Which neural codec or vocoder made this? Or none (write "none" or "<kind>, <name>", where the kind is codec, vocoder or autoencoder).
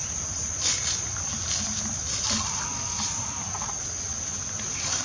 none